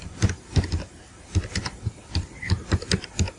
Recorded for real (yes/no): yes